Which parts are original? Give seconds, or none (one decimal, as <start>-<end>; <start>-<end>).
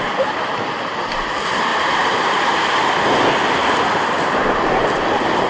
0.0-5.5